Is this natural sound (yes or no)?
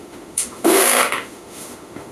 no